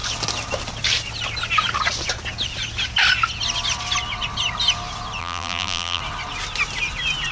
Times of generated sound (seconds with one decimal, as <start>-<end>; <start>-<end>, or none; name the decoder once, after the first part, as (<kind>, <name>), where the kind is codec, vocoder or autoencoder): 5.2-6.0 (vocoder, BigVGAN v2)